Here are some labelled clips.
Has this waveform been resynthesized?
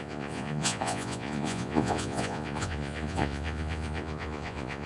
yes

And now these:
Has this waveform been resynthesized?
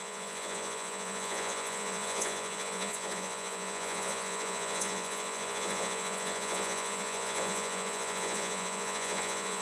yes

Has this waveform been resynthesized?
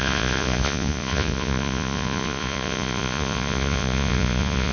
yes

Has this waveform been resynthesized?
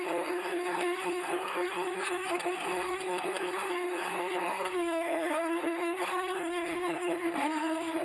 yes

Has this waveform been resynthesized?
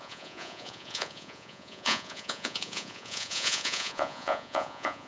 yes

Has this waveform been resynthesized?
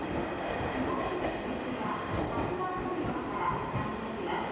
no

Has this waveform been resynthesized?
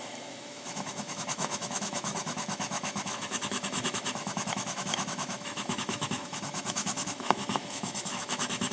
yes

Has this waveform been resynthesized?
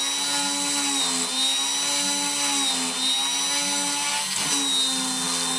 no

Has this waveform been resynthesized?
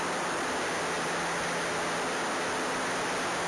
no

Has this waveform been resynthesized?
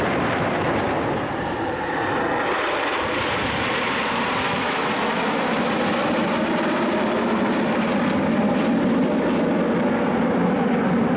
no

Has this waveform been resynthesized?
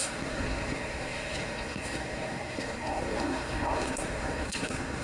yes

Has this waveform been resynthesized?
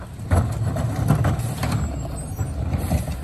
no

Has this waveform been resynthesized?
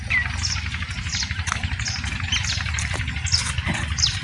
no